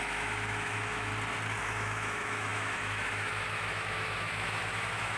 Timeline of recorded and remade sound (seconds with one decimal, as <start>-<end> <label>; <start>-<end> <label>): 0.0-1.1 remade; 1.1-1.6 recorded; 1.6-5.2 remade